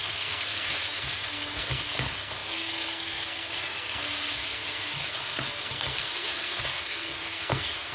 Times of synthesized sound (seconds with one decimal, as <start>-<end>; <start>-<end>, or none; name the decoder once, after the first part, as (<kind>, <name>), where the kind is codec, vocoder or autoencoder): 0.0-7.9 (codec, SNAC)